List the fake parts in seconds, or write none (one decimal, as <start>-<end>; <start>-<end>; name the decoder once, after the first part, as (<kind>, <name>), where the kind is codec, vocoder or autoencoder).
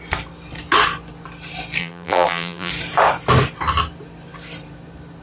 1.8-2.7 (vocoder, BigVGAN v2)